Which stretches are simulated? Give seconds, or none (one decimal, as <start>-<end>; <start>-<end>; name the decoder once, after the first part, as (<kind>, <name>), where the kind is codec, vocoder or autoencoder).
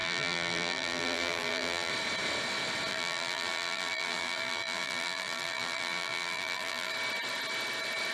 0.0-1.9 (vocoder, BigVGAN v2); 2.9-6.9